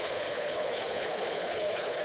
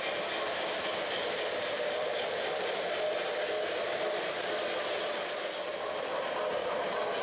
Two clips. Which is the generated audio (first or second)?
first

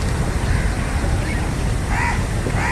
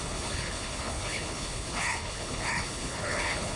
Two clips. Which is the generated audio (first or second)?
second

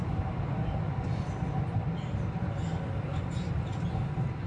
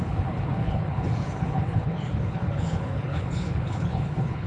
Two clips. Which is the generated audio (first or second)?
second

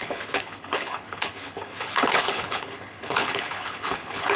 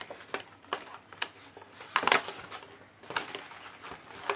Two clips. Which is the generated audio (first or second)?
first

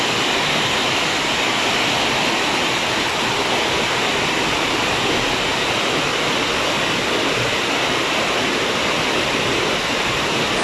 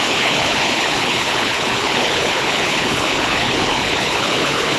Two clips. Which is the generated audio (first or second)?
second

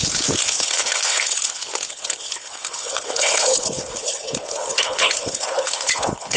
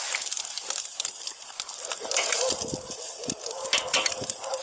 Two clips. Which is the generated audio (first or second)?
first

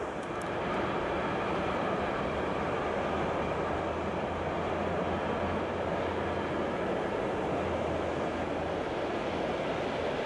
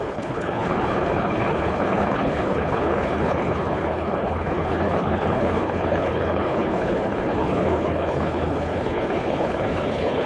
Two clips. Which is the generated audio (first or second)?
second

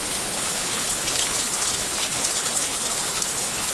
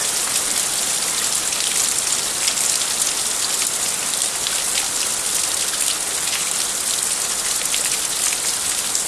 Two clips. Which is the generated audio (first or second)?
first